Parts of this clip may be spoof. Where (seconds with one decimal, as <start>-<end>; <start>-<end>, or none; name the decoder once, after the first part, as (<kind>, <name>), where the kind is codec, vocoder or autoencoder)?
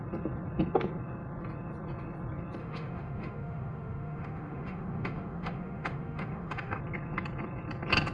2.6-6.8 (autoencoder, DAC-VAE)